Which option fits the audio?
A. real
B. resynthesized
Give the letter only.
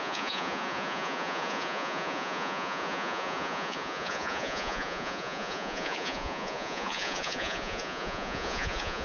B